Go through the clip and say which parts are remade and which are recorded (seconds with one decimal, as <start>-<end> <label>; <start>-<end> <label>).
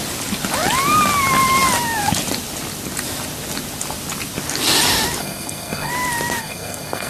0.0-5.2 recorded; 5.2-5.9 remade; 5.9-6.4 recorded; 6.4-7.1 remade